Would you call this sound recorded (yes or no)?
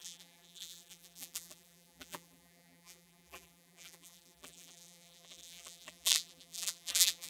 no